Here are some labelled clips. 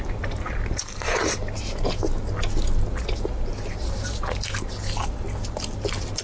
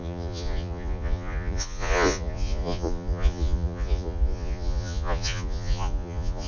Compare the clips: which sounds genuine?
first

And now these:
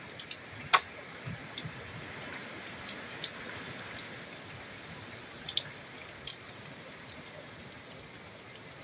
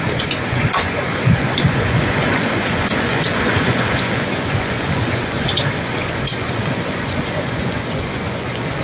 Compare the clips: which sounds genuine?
first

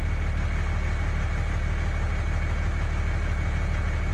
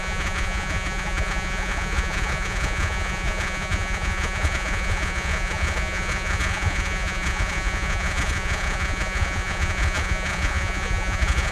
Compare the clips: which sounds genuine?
first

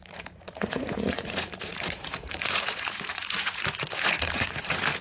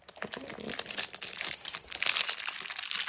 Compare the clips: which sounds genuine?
second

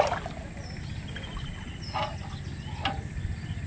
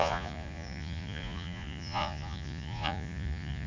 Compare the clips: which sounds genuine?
first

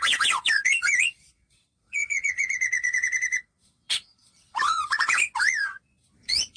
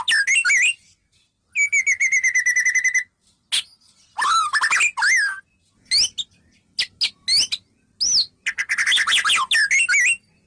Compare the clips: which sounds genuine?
second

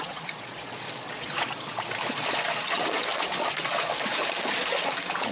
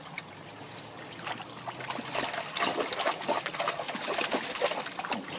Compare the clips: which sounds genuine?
second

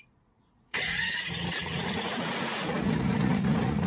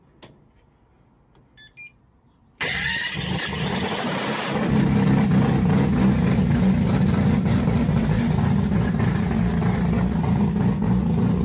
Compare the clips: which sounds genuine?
second